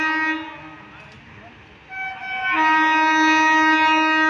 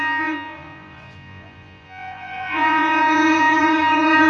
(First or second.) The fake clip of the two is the second